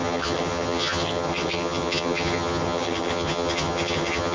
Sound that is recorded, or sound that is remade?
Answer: remade